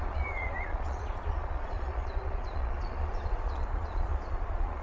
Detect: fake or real fake